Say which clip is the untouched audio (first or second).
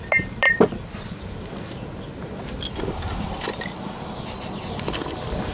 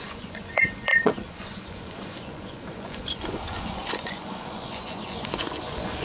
first